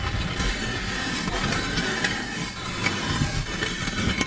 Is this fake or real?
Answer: real